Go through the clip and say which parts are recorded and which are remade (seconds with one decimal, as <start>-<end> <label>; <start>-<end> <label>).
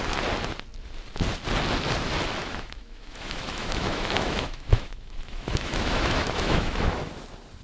0.0-2.4 recorded; 2.4-7.0 remade; 7.0-7.6 recorded